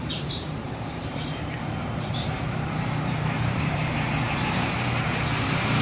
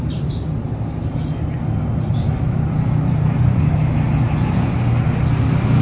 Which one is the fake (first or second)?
first